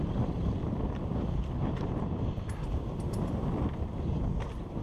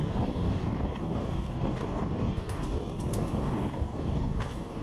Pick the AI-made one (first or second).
second